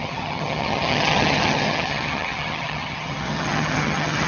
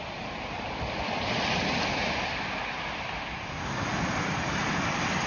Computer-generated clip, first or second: first